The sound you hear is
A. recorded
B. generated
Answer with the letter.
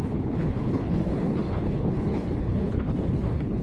B